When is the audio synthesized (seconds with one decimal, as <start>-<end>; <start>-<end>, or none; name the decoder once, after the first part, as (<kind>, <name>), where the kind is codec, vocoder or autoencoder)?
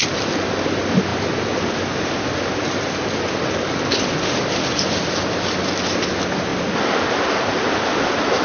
none